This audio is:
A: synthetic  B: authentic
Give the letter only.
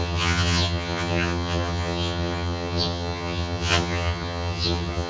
A